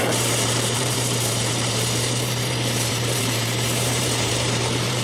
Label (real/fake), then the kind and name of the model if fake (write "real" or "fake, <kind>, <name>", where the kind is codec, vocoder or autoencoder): fake, vocoder, BigVGAN v2